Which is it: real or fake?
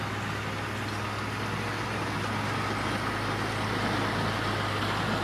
real